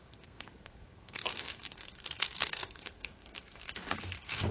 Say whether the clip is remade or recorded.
remade